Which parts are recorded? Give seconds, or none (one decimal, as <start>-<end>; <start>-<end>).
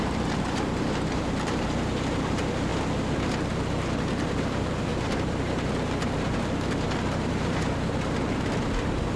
2.7-4.1